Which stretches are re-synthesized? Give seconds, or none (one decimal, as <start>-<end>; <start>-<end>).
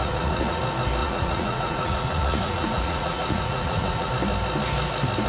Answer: 0.0-0.6; 1.0-4.1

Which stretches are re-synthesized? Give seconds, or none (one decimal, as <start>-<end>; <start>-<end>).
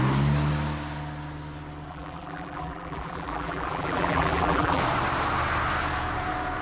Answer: 1.9-4.8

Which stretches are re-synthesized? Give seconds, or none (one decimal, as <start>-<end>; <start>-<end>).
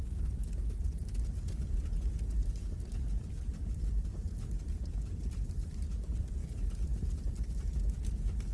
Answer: 0.0-4.1; 5.5-6.4